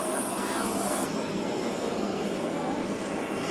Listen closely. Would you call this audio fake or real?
fake